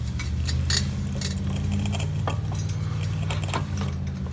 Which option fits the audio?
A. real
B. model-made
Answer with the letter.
A